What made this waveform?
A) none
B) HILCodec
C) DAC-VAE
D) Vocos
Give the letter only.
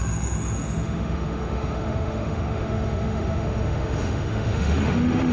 C